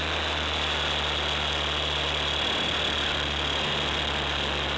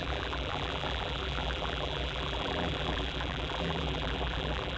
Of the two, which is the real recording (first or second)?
first